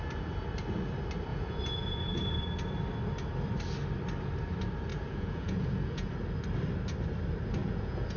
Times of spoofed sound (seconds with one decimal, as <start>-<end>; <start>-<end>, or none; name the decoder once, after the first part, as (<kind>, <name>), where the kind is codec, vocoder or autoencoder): 1.3-2.4 (vocoder, Vocos); 4.9-6.1; 7.6-8.2